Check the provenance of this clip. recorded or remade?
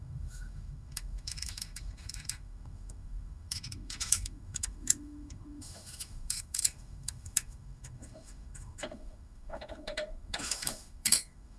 remade